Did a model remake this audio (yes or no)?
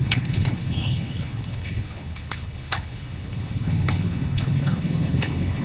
yes